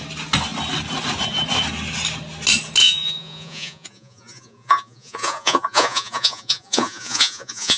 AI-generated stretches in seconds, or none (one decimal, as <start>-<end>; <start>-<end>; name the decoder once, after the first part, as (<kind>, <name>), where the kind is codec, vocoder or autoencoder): 2.8-7.8 (vocoder, Vocos)

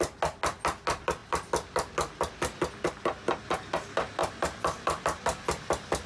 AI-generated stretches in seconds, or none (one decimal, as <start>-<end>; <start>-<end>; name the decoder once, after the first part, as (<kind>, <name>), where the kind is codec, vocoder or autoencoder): none

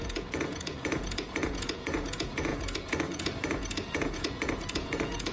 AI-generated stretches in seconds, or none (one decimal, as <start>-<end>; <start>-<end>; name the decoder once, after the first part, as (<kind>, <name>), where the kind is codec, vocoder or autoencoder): 0.0-5.3 (vocoder, Vocos)